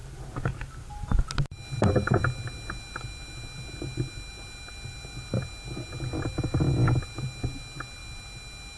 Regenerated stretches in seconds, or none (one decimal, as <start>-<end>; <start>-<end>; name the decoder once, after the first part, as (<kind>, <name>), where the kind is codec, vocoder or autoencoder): none